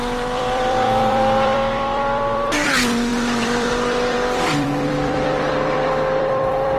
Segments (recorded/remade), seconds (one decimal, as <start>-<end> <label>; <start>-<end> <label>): 0.0-6.8 remade